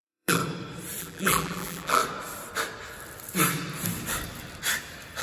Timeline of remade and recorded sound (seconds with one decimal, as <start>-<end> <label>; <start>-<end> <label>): 0.0-0.4 remade; 0.4-1.0 recorded; 1.0-2.0 remade; 2.0-5.2 recorded